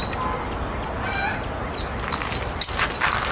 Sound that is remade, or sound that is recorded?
recorded